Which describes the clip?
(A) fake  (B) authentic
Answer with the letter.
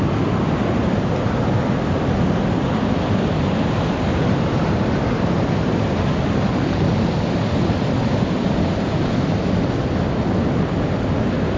B